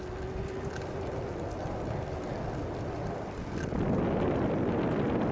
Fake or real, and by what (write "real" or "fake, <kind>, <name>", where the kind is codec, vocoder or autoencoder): real